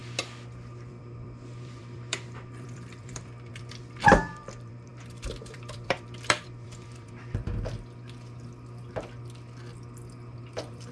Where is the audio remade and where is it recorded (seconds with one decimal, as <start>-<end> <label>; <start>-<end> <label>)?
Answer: 0.0-0.9 recorded; 0.9-4.9 remade; 4.9-5.4 recorded; 5.4-7.5 remade; 7.5-10.4 recorded; 10.4-10.9 remade